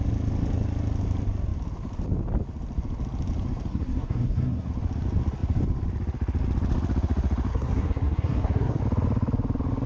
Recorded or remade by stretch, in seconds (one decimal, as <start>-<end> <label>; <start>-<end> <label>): 0.0-3.7 recorded; 3.7-4.7 remade; 4.7-7.5 recorded; 7.5-8.8 remade; 8.8-9.9 recorded